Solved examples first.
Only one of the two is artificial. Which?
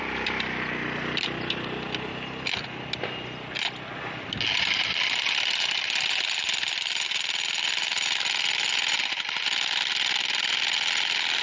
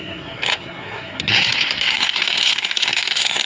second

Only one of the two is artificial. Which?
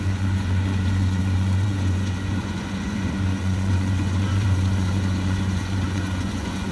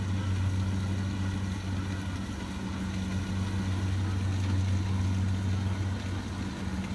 first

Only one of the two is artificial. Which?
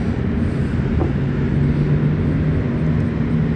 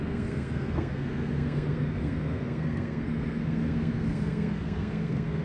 second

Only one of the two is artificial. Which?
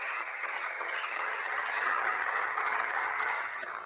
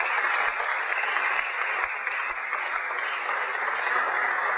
first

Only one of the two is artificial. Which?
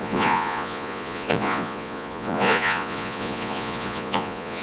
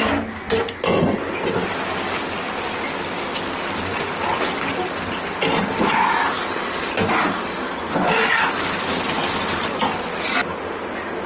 first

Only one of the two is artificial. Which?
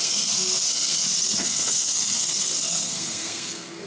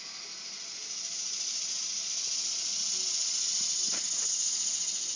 first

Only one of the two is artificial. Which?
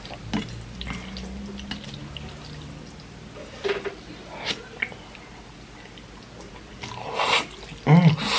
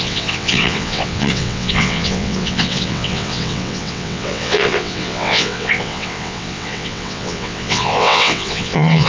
second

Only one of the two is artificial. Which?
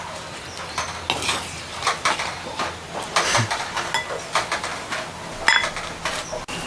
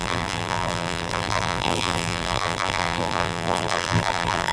second